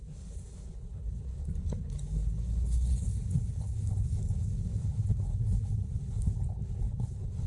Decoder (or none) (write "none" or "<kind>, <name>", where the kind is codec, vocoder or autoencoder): codec, HILCodec